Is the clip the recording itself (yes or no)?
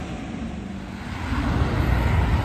yes